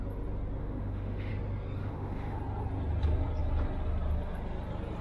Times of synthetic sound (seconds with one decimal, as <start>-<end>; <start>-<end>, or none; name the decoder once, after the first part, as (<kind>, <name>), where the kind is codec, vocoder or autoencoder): 0.6-1.3 (autoencoder, DAC-VAE); 1.8-2.4